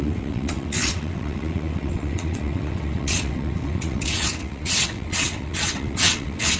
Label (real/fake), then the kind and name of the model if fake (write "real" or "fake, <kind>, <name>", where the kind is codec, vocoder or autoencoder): fake, vocoder, WaveNeXt